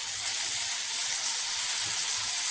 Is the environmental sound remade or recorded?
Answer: recorded